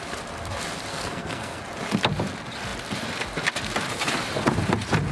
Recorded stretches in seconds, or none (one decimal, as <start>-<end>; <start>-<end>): 0.0-0.9; 1.6-5.1